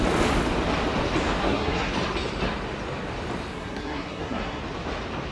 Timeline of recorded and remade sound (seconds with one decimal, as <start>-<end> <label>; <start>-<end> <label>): 0.0-1.4 recorded; 1.4-1.9 remade; 1.9-3.5 recorded; 3.5-4.6 remade; 4.6-5.3 recorded